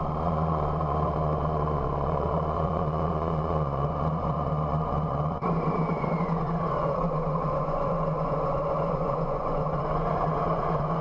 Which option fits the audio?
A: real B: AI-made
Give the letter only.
B